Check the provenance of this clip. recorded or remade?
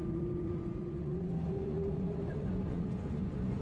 remade